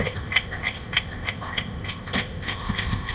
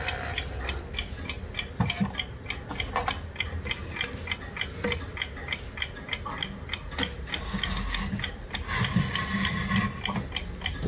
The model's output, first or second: first